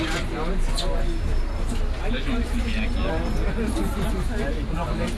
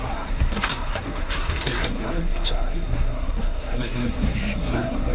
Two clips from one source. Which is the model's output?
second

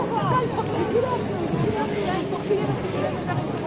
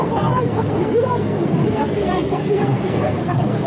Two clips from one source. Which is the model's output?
second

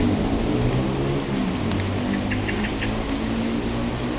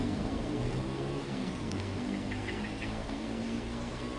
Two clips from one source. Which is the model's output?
second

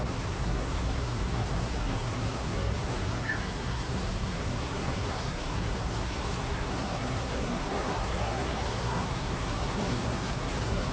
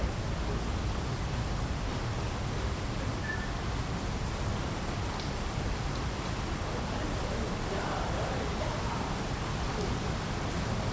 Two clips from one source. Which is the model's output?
first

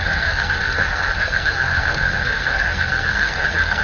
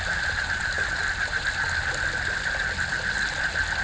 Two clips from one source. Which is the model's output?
first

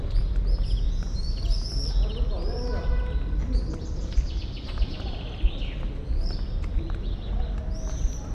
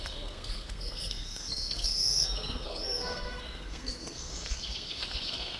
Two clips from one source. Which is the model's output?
second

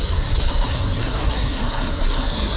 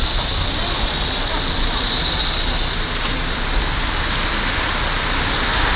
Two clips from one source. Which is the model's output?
first